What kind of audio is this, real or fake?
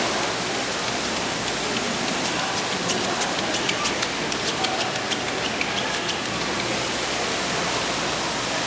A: real